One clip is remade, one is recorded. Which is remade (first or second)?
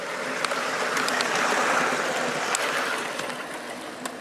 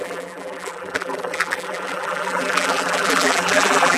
second